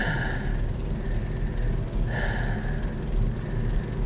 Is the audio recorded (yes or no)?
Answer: yes